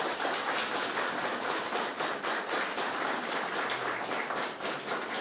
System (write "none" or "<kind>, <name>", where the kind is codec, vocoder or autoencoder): none